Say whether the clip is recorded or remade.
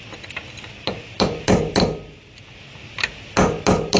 recorded